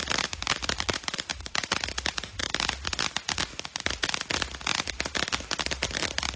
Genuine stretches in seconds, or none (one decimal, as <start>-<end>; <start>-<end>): 3.5-4.9